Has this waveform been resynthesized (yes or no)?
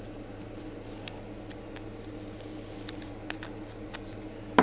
no